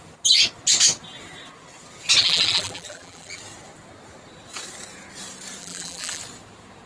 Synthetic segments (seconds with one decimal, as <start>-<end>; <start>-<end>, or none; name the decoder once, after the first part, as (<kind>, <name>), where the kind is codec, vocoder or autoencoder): 2.2-3.4 (vocoder, BigVGAN v2); 5.6-6.2